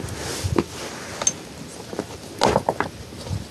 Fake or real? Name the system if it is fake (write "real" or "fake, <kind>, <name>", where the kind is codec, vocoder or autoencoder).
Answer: real